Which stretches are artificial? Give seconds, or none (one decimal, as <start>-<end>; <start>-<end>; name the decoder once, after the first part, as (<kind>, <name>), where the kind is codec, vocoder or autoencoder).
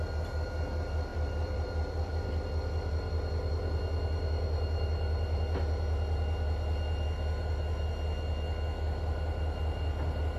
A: 1.1-2.1 (vocoder, BigVGAN v2)